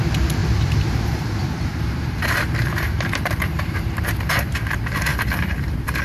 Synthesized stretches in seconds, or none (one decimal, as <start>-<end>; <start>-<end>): 0.0-6.0